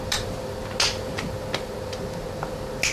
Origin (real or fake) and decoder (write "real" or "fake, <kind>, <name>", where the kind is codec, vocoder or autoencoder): real